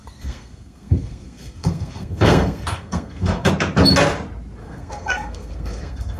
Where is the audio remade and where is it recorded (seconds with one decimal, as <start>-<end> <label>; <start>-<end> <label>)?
0.0-3.5 remade; 3.5-4.6 recorded; 4.6-6.2 remade